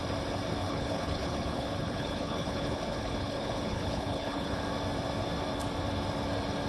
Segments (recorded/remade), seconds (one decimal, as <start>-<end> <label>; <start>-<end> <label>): 0.0-0.6 recorded; 0.6-4.6 remade; 4.6-6.7 recorded